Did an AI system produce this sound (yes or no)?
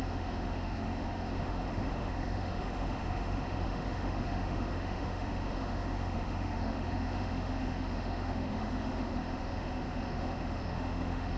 yes